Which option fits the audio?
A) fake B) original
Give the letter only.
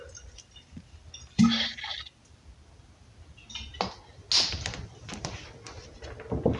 B